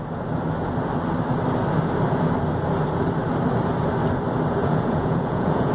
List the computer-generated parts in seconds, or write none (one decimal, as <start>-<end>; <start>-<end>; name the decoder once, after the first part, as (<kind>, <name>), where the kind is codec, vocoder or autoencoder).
4.6-5.7 (vocoder, Vocos)